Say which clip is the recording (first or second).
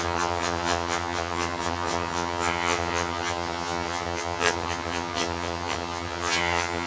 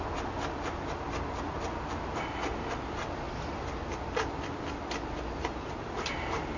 second